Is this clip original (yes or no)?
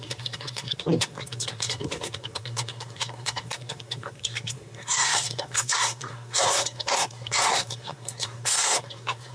no